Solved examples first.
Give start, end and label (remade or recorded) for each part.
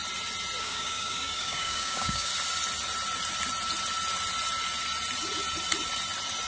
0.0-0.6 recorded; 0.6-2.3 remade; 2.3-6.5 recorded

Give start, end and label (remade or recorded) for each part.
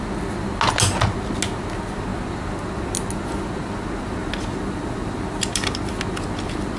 0.0-6.8 recorded